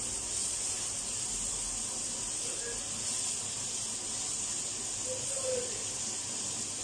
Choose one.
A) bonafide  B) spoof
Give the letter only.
A